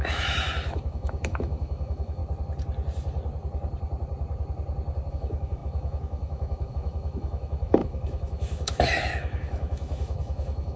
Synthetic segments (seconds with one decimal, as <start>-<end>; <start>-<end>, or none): 0.0-2.2; 5.1-10.8